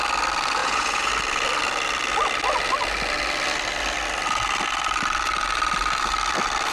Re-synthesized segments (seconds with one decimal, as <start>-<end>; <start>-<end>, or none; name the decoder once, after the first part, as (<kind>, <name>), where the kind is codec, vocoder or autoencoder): 0.6-1.1 (vocoder, Vocos)